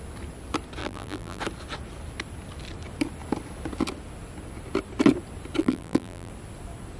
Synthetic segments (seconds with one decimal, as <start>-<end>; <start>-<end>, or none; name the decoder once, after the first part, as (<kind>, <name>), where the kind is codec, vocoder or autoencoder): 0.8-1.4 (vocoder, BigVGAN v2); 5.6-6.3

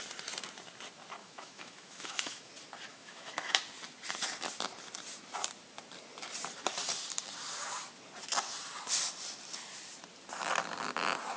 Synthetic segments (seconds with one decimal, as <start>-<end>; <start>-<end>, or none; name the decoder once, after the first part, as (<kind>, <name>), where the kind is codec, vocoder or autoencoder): 1.2-2.5 (autoencoder, DAC-VAE); 2.9-3.6

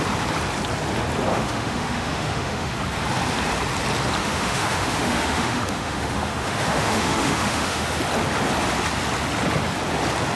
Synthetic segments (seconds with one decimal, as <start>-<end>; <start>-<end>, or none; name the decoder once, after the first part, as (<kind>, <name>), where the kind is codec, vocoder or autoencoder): 1.3-2.8 (autoencoder, DAC-VAE); 4.2-8.0